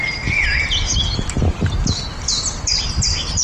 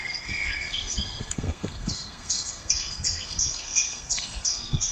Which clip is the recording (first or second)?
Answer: first